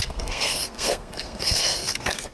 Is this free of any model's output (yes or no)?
no